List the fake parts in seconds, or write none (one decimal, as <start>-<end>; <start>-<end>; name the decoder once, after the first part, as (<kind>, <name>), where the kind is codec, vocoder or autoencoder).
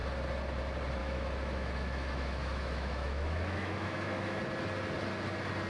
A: 1.0-4.4 (autoencoder, DAC-VAE)